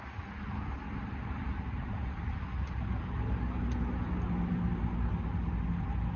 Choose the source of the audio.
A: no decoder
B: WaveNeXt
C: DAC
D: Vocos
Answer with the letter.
A